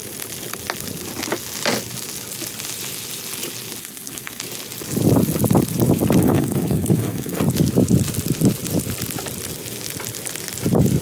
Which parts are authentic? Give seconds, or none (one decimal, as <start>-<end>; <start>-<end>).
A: 0.0-3.8; 4.4-6.2; 7.4-11.0